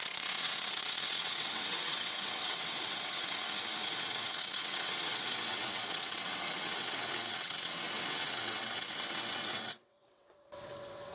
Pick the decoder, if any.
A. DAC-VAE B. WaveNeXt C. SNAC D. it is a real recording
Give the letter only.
B